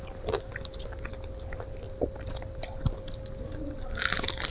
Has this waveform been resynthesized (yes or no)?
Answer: no